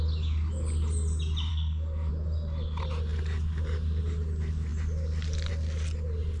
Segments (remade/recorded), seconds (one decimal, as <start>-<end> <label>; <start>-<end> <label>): 0.0-1.5 recorded; 1.5-2.1 remade; 2.1-6.4 recorded